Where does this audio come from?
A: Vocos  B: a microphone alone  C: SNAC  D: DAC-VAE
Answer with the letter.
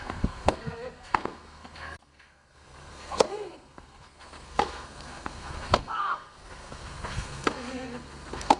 C